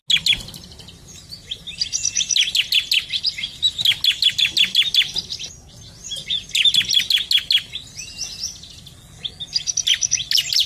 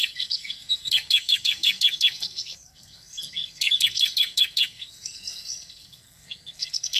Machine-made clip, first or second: second